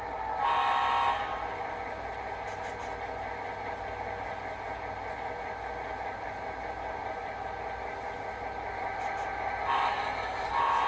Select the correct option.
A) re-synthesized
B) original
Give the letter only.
B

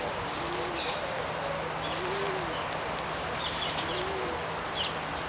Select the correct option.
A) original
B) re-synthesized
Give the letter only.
A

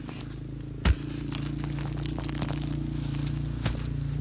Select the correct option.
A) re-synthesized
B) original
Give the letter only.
B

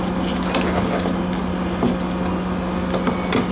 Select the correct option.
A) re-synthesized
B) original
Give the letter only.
B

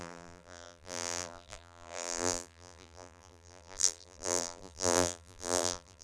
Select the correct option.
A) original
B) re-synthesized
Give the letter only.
B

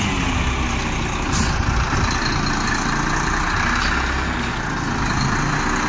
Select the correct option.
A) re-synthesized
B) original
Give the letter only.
B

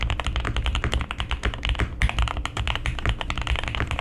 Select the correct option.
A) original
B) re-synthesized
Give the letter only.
B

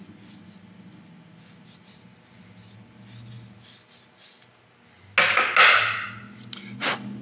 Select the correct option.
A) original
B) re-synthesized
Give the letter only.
A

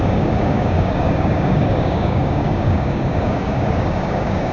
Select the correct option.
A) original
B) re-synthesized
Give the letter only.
B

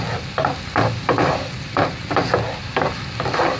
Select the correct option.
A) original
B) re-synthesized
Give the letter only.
A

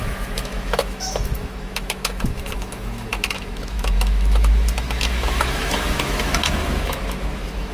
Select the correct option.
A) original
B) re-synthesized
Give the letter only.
B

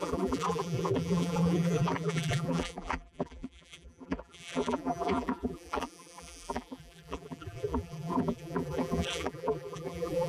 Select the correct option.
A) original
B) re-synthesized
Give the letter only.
B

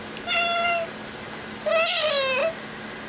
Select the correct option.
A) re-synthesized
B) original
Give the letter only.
B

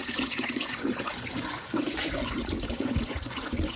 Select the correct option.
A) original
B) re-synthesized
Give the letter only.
B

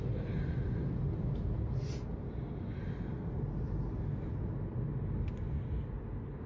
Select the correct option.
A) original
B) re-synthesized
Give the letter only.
A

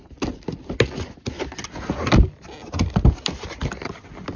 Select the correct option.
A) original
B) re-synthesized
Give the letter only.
A